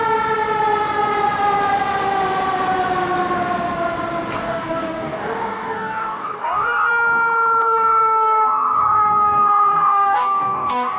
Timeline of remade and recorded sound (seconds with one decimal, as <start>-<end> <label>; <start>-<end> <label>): 0.0-4.4 recorded; 4.4-6.9 remade; 6.9-7.6 recorded; 7.6-11.0 remade